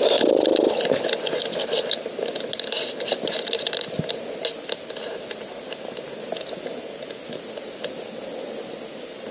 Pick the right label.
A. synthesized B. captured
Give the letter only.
B